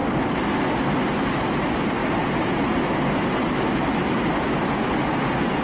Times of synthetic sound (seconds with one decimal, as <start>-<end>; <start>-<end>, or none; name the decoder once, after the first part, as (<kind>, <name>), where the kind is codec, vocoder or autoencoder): none